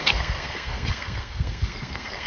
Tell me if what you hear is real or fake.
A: fake